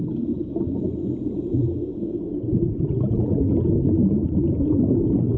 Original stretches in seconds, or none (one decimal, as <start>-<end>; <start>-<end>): 0.0-5.4